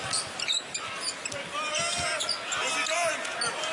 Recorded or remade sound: recorded